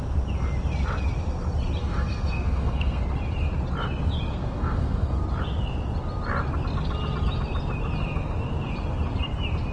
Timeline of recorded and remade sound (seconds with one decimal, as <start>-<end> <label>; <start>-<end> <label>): 0.0-1.8 recorded; 1.8-3.0 remade; 3.0-4.3 recorded; 4.3-5.2 remade; 5.2-9.7 recorded